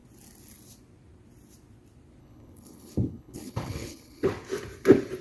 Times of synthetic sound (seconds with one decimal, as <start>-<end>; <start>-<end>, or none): 2.2-4.3